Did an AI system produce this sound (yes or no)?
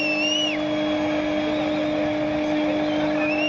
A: no